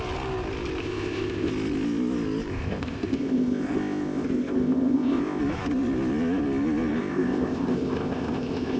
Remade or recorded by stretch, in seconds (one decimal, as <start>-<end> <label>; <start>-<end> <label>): 0.0-0.8 recorded; 0.8-1.5 remade; 1.5-2.5 recorded; 2.5-5.4 remade; 5.4-7.0 recorded; 7.0-8.8 remade